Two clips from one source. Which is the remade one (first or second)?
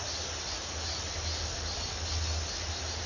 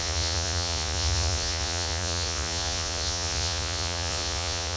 second